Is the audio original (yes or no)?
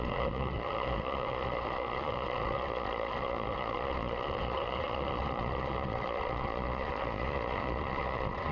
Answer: no